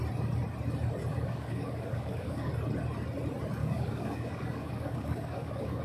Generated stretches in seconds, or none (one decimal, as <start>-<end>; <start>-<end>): 1.1-2.5; 3.6-5.8